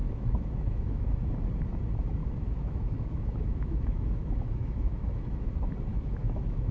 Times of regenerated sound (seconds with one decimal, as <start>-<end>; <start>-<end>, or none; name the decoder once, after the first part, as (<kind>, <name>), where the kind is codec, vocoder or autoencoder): 0.0-1.3 (autoencoder, DAC-VAE); 2.2-5.5; 5.9-6.7